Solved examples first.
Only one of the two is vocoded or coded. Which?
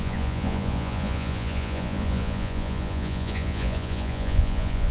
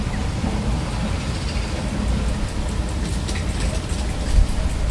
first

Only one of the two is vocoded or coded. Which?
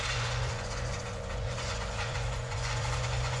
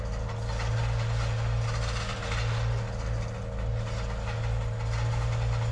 first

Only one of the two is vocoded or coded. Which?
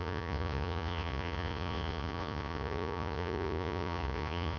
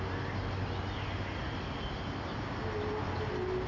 first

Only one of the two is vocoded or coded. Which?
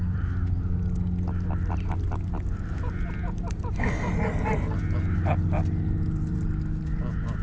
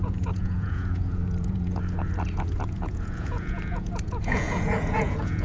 second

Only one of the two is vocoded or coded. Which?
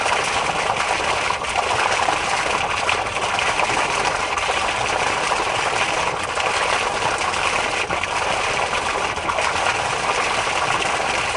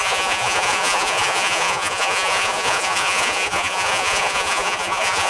second